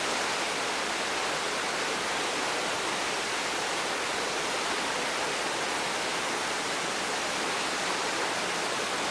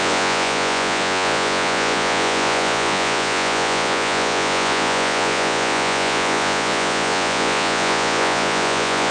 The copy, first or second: second